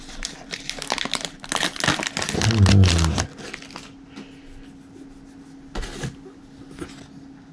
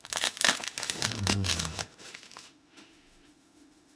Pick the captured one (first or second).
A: first